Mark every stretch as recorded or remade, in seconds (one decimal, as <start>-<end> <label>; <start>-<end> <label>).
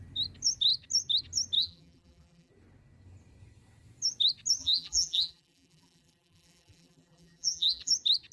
0.0-1.6 recorded; 1.6-2.5 remade; 2.5-4.6 recorded; 4.6-7.9 remade; 7.9-8.3 recorded